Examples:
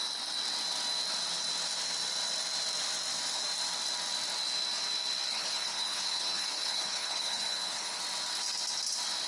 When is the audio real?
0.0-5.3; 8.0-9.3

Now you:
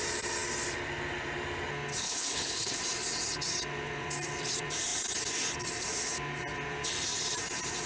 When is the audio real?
0.0-2.0; 2.8-7.9